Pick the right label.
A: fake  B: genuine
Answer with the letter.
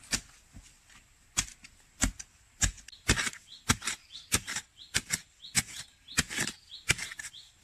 B